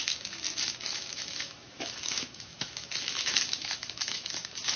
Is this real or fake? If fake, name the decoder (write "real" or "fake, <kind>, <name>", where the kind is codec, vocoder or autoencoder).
fake, autoencoder, DAC-VAE